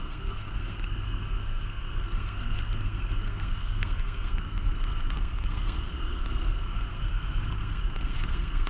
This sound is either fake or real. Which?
fake